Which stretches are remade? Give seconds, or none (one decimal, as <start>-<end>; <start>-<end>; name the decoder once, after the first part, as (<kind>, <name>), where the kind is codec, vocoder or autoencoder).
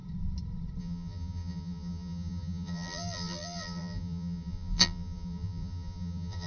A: 0.8-6.5 (vocoder, BigVGAN v2)